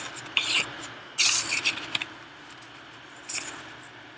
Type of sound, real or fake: real